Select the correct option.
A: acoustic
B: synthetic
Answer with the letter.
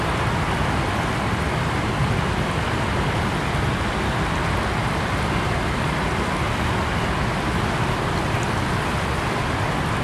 A